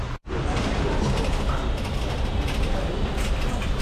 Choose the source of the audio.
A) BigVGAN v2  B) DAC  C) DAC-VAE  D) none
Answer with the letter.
D